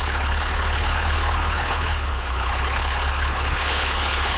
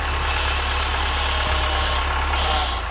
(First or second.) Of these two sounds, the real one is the second